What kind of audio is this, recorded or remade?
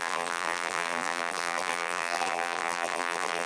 remade